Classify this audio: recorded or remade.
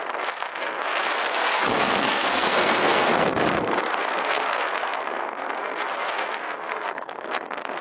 remade